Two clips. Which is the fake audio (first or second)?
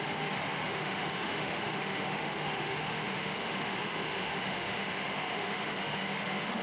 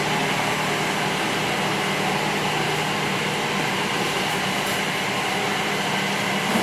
first